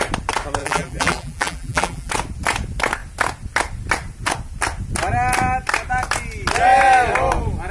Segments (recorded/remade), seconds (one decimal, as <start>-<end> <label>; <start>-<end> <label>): 0.0-0.6 recorded; 0.6-2.1 remade; 2.1-7.7 recorded